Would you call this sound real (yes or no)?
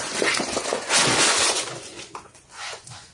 no